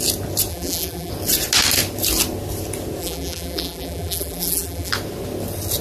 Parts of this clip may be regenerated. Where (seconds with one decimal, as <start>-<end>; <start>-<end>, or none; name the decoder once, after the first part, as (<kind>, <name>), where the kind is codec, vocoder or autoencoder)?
0.5-1.1 (vocoder, BigVGAN v2); 3.0-4.9